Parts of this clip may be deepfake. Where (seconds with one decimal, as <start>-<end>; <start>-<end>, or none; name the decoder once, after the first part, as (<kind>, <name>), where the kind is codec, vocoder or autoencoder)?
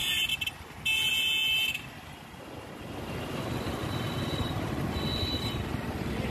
none